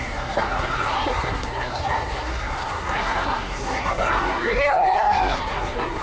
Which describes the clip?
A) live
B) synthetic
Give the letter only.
B